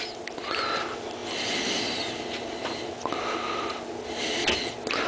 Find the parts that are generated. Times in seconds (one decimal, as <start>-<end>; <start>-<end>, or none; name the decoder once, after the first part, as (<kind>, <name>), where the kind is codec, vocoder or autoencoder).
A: none